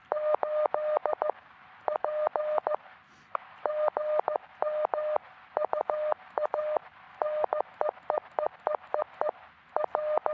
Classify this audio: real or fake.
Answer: real